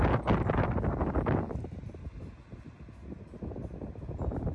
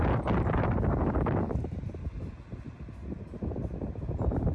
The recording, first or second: first